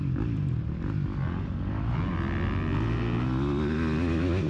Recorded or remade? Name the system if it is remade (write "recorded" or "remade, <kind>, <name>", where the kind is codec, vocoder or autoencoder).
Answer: recorded